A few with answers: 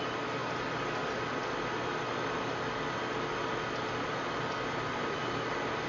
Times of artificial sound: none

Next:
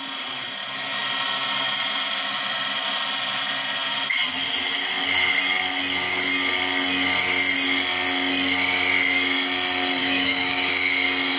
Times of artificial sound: 10.0-10.7

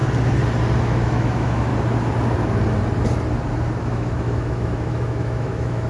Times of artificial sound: 0.8-1.7; 3.8-5.9